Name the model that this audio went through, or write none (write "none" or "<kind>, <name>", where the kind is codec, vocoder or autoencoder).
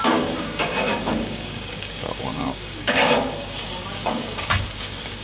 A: codec, DAC